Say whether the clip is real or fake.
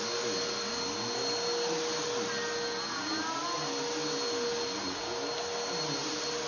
real